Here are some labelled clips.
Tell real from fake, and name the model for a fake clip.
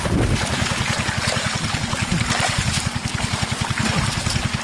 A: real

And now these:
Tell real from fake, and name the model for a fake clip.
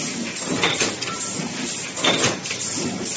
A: real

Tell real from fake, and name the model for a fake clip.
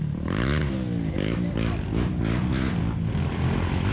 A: real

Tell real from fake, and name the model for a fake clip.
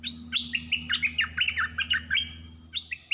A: real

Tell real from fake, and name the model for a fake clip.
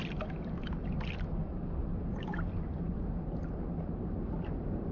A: real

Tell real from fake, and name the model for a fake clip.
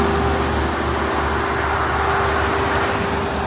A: real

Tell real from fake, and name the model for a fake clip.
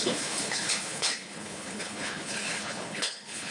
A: fake, codec, HILCodec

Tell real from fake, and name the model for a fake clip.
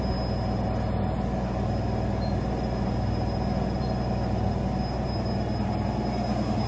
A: real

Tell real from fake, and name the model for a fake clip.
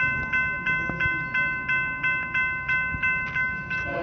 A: real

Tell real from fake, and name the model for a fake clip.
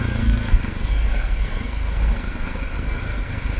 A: fake, codec, SNAC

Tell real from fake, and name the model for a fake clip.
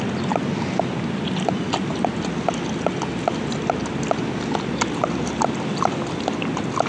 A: real